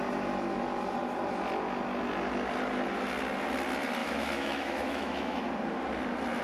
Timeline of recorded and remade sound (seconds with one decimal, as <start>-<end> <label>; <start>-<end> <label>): 0.0-4.0 recorded; 4.0-5.5 remade; 5.5-6.4 recorded